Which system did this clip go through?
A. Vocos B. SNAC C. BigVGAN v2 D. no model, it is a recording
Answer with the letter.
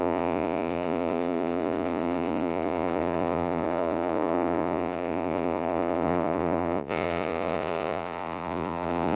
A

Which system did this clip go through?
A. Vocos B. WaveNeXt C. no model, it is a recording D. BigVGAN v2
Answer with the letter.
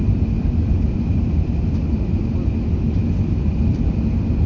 C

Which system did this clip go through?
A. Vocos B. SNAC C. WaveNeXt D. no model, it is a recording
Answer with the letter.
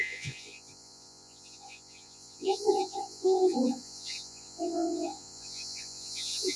A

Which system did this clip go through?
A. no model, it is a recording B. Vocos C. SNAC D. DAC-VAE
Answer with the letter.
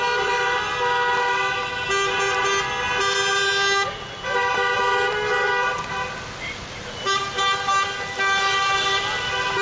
A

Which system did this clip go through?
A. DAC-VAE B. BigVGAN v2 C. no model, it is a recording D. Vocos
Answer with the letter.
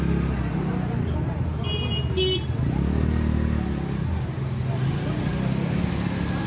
C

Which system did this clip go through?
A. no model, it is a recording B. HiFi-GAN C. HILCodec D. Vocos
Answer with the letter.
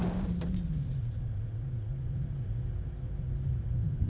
A